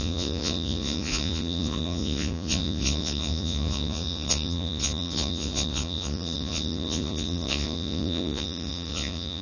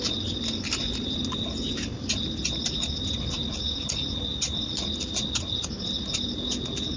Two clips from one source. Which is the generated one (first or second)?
first